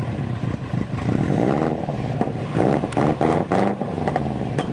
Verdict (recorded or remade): remade